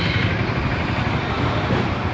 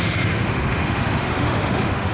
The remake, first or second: second